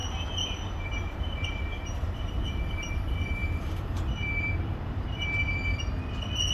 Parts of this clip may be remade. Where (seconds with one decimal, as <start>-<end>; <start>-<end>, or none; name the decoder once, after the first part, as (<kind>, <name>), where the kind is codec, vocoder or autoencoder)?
0.0-2.9 (vocoder, BigVGAN v2); 3.4-5.8